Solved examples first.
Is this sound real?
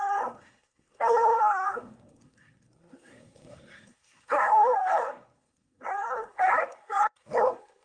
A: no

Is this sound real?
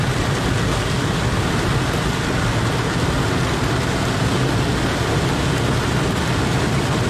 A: yes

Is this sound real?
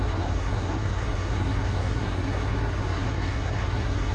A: no